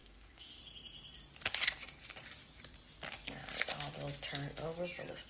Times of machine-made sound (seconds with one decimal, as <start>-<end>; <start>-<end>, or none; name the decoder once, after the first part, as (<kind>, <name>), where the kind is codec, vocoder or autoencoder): 0.0-0.6 (autoencoder, DAC-VAE)

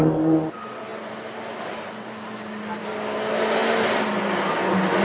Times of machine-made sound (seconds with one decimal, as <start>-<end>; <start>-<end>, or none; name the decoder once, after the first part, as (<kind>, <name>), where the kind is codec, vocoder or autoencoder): none

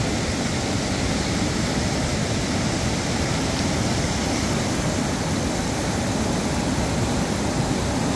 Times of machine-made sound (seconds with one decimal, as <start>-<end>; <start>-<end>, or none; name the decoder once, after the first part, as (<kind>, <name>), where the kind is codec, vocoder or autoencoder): none

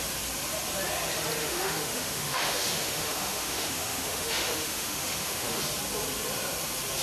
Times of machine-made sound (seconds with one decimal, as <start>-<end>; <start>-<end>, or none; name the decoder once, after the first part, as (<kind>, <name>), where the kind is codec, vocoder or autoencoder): 1.4-5.6 (autoencoder, DAC-VAE)

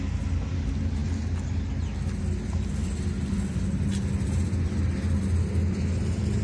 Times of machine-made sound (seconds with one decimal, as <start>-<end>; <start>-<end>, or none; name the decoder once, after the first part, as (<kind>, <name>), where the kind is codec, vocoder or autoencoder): none

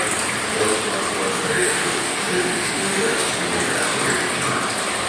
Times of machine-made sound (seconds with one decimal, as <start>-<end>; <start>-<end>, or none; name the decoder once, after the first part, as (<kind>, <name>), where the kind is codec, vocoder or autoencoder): 1.3-3.3 (autoencoder, DAC-VAE)

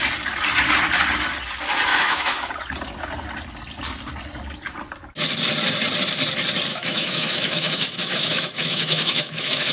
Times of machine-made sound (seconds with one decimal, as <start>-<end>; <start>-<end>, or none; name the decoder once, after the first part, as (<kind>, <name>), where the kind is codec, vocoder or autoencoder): 1.9-2.5 (autoencoder, DAC-VAE); 6.7-9.7